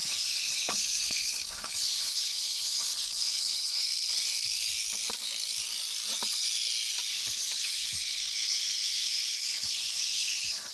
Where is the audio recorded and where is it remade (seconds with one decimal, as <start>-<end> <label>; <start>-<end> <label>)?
0.0-3.8 remade; 3.8-7.1 recorded; 7.1-10.7 remade